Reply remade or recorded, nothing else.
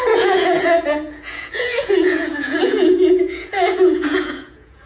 remade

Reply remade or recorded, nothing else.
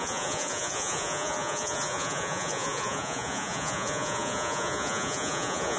remade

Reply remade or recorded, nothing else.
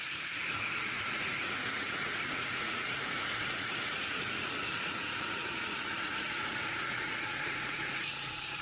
remade